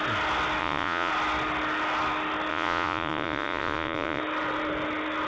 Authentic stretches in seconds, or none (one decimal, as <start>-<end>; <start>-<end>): 0.0-0.6; 1.1-2.5; 4.2-5.3